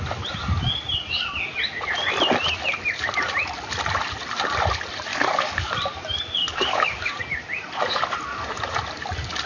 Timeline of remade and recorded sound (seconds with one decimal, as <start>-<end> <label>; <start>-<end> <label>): 0.0-5.1 recorded; 5.1-5.7 remade; 5.7-6.4 recorded; 6.4-7.2 remade; 7.2-9.5 recorded